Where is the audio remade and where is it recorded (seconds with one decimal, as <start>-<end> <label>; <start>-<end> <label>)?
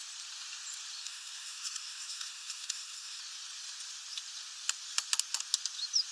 0.0-1.0 recorded; 1.0-3.2 remade; 3.2-6.1 recorded